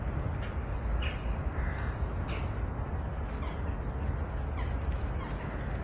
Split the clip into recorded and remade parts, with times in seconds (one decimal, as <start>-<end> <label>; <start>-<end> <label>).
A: 0.0-5.8 recorded